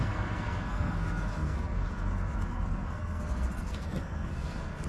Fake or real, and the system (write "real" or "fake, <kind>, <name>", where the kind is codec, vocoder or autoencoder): fake, codec, SNAC